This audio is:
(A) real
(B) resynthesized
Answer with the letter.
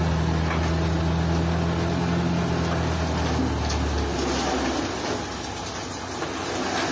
A